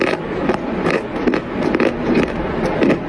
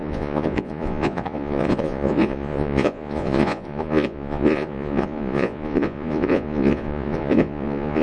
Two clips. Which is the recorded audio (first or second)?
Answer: first